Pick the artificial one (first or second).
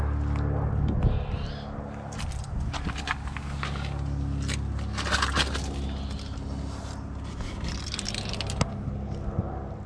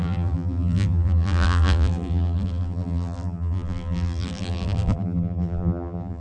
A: second